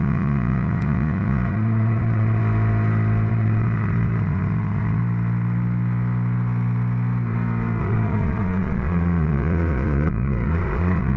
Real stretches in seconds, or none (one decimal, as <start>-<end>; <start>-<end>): 2.4-3.3; 5.0-7.8